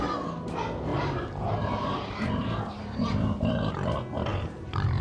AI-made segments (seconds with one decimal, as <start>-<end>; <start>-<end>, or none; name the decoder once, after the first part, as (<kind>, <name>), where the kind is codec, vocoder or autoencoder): 0.9-3.7 (vocoder, BigVGAN v2); 4.3-5.0